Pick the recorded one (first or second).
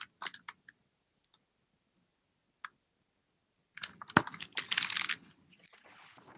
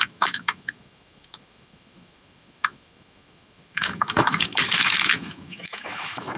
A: first